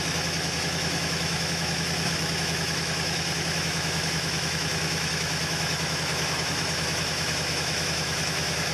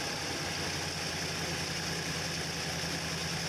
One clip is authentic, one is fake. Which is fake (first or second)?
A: first